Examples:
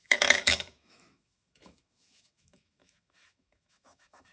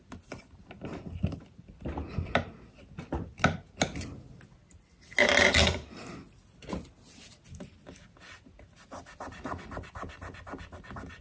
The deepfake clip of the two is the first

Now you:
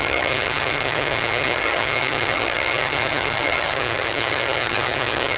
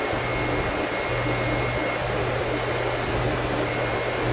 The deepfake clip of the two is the first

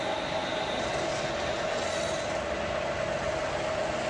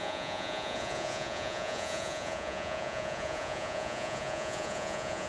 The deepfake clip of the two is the second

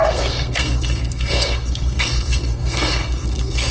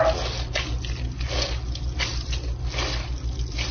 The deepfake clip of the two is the first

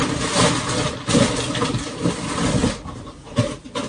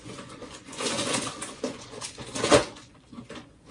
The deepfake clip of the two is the second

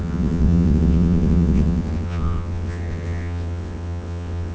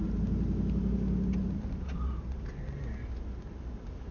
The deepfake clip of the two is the first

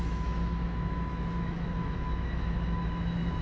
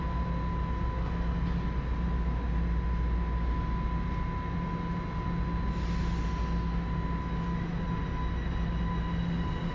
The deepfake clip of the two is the first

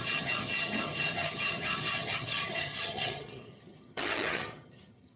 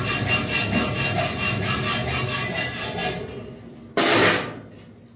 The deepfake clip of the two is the first